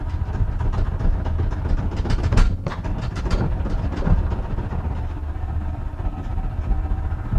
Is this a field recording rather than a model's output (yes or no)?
no